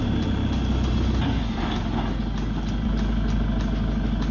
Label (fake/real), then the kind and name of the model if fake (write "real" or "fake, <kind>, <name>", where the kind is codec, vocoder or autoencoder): real